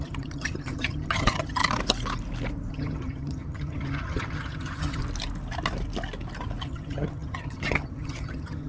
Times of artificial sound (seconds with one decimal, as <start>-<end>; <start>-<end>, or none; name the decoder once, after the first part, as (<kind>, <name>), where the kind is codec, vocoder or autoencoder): 0.0-1.6 (vocoder, HiFi-GAN); 2.7-5.0; 6.6-8.7